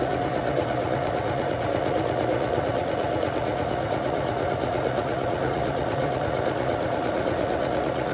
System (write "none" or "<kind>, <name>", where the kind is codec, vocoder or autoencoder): vocoder, Vocos